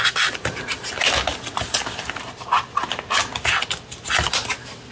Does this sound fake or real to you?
real